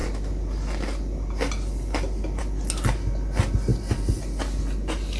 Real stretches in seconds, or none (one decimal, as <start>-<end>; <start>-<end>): 0.0-5.2